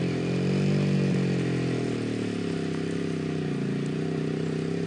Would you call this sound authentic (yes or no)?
yes